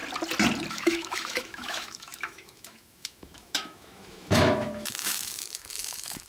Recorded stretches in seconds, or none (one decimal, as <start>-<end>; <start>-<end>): 0.0-0.7